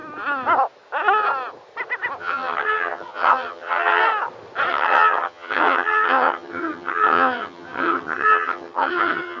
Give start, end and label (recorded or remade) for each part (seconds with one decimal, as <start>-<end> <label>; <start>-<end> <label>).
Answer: 0.0-2.2 recorded; 2.2-4.0 remade; 4.0-4.7 recorded; 4.7-9.4 remade